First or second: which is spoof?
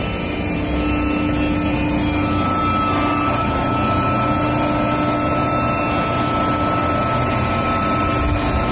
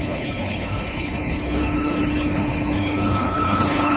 second